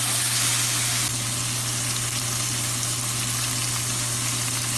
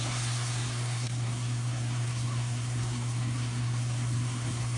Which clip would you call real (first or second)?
first